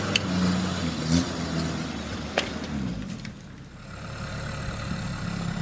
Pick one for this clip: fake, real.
real